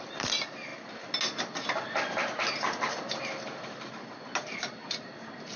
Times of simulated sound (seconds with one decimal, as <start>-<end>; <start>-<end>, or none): none